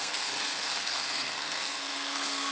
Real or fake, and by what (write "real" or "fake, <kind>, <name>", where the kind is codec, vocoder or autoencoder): fake, codec, SNAC